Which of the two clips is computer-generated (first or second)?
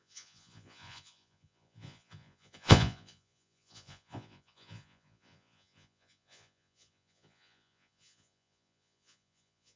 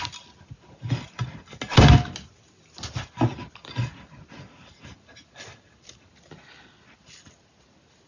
first